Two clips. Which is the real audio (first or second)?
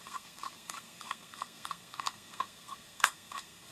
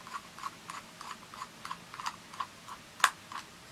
second